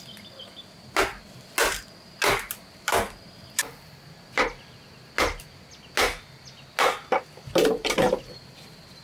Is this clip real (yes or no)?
yes